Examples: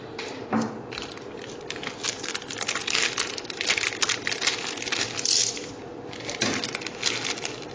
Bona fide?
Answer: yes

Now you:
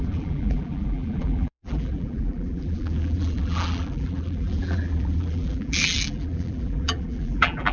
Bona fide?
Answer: no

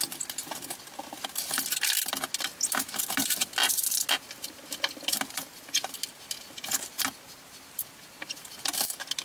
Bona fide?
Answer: yes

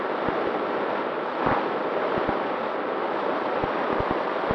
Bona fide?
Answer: yes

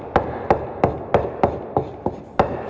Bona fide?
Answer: yes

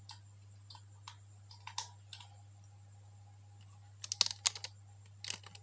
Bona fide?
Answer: yes